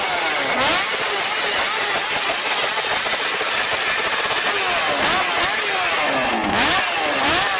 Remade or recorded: recorded